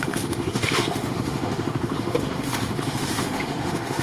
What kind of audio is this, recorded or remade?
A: remade